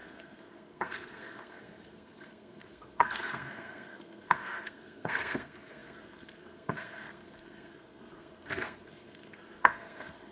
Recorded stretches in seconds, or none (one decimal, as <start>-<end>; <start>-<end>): none